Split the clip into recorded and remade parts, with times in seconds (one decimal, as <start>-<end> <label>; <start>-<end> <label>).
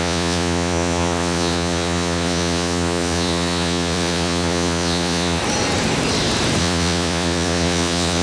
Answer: 0.0-5.4 remade; 5.4-6.6 recorded; 6.6-8.2 remade